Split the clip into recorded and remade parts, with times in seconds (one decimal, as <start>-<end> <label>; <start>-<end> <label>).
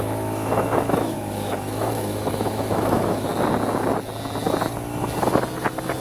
0.0-3.3 remade; 3.3-6.0 recorded